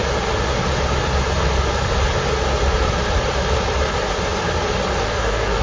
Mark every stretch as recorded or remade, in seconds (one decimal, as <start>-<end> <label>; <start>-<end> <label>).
0.0-4.9 recorded; 4.9-5.6 remade